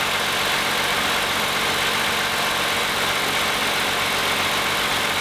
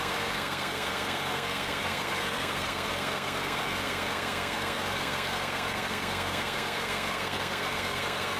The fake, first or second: second